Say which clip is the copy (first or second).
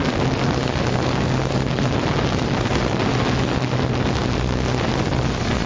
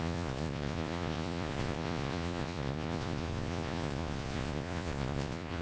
second